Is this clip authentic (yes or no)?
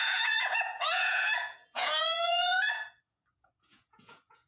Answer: no